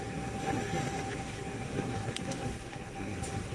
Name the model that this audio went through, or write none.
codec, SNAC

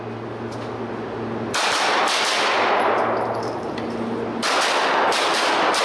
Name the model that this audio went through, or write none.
none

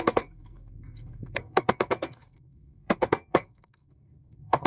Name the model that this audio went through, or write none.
codec, SNAC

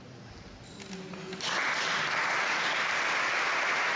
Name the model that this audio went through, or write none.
none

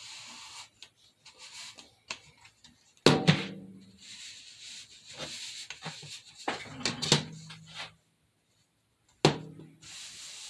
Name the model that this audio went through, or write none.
none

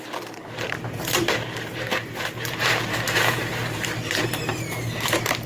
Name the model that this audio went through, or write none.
vocoder, BigVGAN v2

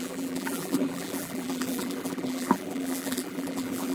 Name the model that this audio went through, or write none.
vocoder, BigVGAN v2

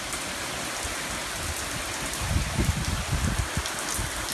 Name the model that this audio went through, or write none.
none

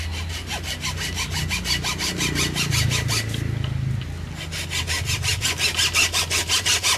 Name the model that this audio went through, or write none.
none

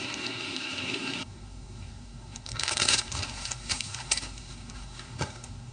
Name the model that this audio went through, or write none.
codec, SNAC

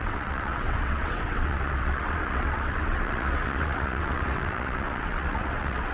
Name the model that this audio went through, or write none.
vocoder, WaveNeXt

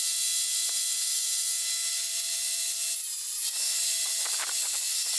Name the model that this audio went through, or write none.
none